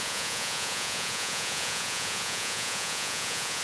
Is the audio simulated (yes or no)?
yes